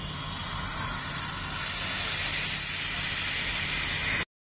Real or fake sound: real